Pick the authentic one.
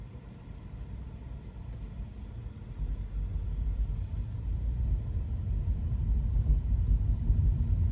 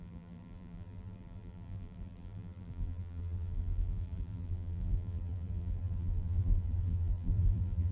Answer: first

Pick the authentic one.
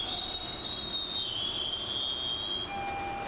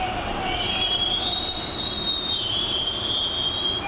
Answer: first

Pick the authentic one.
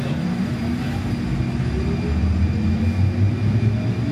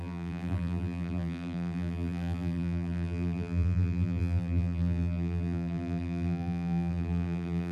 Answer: first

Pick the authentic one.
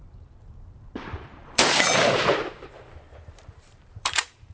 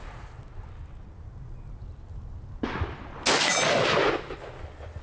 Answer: second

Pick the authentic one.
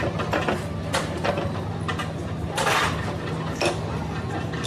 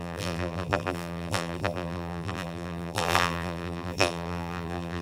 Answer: first